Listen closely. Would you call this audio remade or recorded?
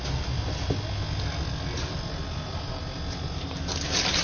recorded